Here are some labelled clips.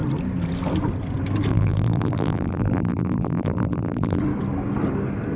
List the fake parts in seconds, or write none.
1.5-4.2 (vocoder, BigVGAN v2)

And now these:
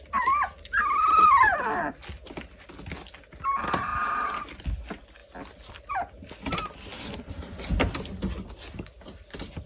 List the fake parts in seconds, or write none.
none

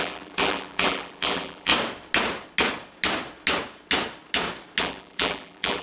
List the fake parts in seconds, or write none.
0.0-1.7 (vocoder, BigVGAN v2); 4.8-5.8

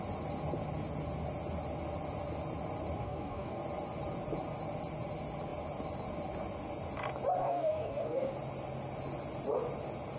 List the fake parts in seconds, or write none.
3.0-3.6 (codec, DAC); 7.4-8.3

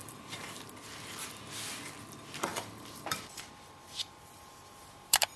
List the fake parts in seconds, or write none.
0.0-0.6 (vocoder, BigVGAN v2); 2.5-5.4

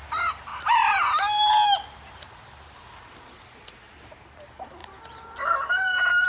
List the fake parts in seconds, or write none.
none